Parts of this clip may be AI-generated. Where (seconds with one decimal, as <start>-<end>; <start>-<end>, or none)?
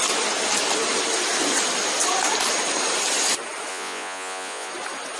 3.7-4.7